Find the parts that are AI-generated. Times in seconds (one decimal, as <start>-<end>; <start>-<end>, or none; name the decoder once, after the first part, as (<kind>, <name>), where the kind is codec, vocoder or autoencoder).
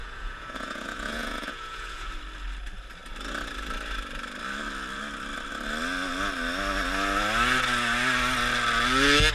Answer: 0.0-2.1 (vocoder, Vocos)